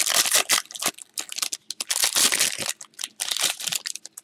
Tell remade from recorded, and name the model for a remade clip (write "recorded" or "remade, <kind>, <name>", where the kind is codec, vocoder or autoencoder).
recorded